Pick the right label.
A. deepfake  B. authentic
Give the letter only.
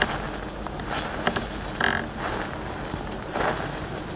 B